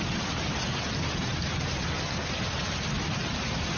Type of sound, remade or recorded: recorded